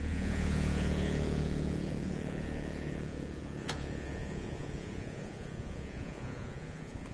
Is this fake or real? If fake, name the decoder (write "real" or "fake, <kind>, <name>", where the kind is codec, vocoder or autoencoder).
fake, vocoder, Vocos